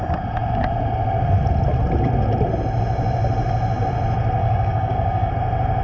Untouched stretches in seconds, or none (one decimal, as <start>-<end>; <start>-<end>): 0.0-4.4; 5.3-5.8